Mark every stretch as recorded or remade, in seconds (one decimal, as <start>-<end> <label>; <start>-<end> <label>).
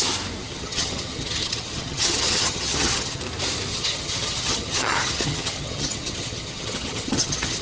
0.0-0.4 recorded; 0.4-3.2 remade; 3.2-3.7 recorded; 3.7-7.6 remade